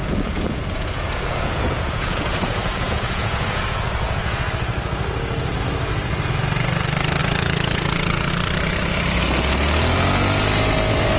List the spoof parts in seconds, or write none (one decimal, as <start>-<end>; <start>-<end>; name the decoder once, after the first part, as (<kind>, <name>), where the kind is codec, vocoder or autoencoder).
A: 0.0-4.5 (vocoder, Vocos); 7.2-8.3